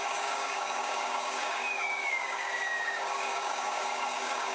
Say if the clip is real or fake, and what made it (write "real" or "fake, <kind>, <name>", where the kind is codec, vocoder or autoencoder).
fake, codec, DAC